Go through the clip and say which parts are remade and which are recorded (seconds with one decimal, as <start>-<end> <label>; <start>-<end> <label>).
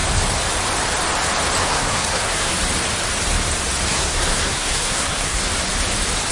0.0-1.6 recorded; 1.6-2.5 remade; 2.5-3.9 recorded; 3.9-5.4 remade; 5.4-6.3 recorded